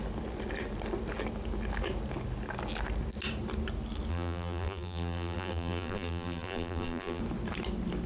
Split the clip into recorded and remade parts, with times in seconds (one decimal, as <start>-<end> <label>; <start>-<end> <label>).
0.0-4.1 recorded; 4.1-7.2 remade; 7.2-8.1 recorded